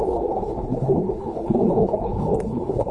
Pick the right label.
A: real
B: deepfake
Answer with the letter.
B